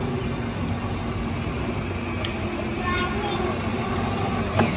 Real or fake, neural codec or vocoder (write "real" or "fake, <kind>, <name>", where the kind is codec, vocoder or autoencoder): real